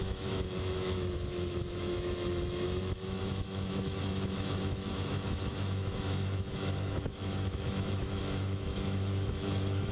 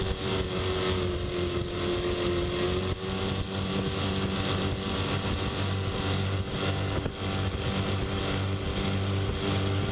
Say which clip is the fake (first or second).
first